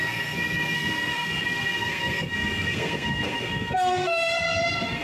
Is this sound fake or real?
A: fake